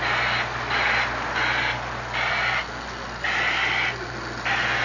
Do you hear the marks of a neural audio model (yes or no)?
no